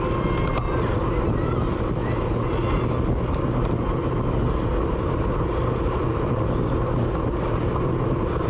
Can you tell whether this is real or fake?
real